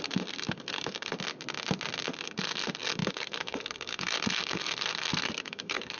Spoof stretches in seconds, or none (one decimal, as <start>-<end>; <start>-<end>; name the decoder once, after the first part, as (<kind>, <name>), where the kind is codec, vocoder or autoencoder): 0.0-1.1 (codec, SNAC); 2.1-6.0